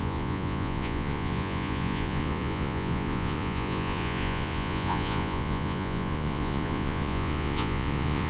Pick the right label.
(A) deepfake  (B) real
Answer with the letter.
A